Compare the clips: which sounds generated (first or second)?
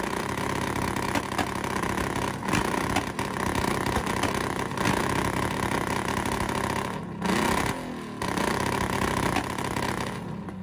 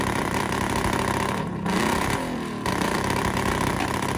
second